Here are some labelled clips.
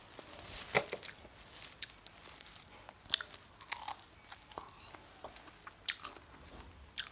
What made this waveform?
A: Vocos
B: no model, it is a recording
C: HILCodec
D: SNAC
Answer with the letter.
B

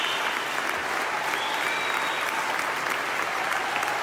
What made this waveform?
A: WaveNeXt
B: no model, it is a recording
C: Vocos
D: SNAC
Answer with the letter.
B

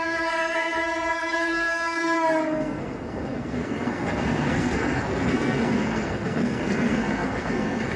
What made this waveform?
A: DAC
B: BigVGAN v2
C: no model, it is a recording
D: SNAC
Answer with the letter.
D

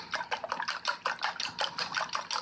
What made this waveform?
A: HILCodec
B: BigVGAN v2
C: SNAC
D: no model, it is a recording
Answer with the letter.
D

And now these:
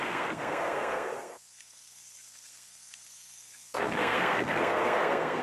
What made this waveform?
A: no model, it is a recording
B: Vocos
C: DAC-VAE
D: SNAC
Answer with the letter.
D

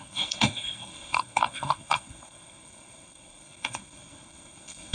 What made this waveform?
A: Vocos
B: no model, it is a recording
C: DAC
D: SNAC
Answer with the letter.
D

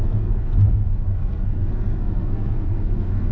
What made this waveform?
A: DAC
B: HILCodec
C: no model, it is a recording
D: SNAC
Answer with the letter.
D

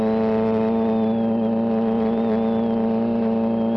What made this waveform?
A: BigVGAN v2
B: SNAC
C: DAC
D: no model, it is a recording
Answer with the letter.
D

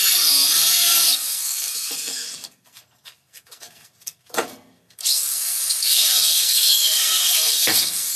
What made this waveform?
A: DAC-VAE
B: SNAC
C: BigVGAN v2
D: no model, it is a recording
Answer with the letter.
B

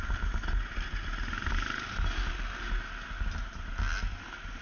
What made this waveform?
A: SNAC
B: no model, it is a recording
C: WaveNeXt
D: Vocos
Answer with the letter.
B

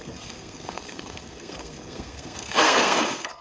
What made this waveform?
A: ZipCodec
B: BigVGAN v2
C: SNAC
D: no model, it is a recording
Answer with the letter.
C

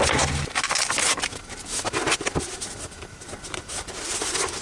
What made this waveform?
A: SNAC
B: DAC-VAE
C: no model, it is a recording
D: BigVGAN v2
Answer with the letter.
C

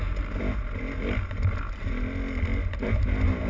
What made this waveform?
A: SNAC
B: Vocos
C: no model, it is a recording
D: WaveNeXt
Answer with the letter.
C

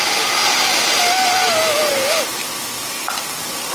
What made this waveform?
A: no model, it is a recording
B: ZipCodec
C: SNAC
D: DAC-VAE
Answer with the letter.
A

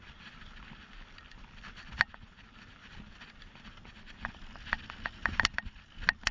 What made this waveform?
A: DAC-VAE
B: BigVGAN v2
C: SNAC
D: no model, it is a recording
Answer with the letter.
D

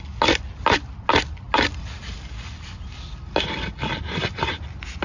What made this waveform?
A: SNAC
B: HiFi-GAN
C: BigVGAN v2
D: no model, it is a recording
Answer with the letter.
D